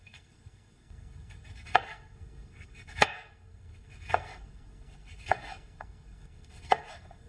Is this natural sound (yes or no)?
no